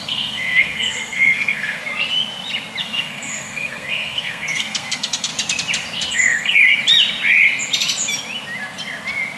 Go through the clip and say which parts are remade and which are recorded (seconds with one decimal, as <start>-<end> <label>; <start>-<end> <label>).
0.0-1.8 remade; 1.8-2.8 recorded; 2.8-5.3 remade; 5.3-6.1 recorded; 6.1-6.6 remade; 6.6-9.4 recorded